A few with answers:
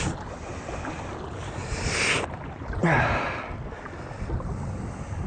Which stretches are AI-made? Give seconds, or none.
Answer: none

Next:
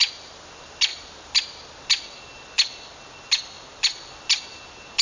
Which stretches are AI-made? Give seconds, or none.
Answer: none

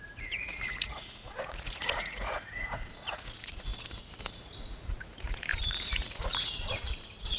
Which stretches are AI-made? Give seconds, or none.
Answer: 0.0-7.4 (vocoder, Vocos)

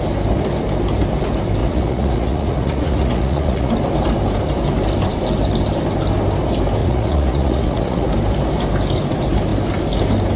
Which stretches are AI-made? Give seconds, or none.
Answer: 1.6-3.7 (vocoder, Vocos); 6.8-8.1

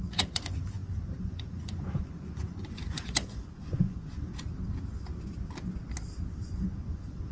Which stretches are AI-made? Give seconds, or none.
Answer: 0.0-4.3 (vocoder, Vocos); 6.4-7.3

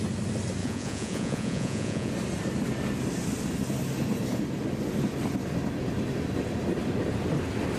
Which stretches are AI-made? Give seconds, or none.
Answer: 0.6-2.1 (vocoder, Vocos)

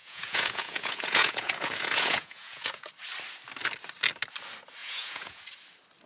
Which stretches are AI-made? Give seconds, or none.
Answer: 0.0-2.9 (vocoder, Vocos); 4.8-5.4